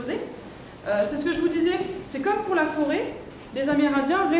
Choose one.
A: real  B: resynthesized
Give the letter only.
A